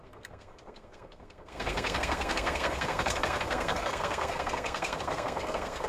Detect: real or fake fake